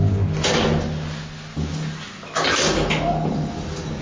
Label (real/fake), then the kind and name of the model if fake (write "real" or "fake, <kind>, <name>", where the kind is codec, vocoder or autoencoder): real